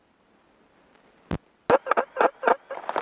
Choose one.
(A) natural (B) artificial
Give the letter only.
A